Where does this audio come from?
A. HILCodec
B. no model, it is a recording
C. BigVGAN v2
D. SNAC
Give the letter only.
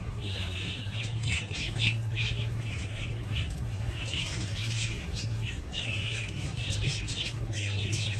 D